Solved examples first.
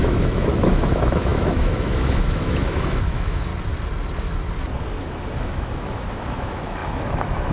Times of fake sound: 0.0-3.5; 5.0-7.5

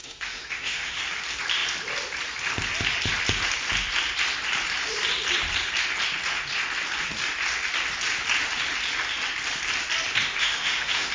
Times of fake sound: 0.0-1.0; 10.4-11.1

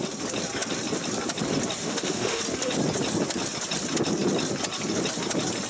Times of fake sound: 1.8-2.4

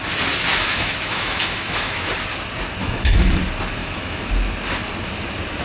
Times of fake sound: 0.5-2.1; 2.8-3.4; 3.8-4.3